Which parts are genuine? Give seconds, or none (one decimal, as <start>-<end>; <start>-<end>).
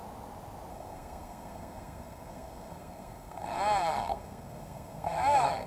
0.0-0.7